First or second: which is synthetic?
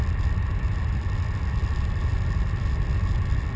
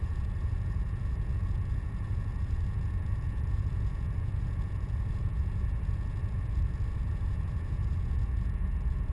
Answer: second